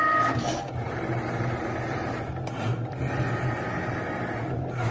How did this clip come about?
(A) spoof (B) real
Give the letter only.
B